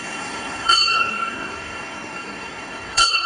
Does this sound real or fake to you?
fake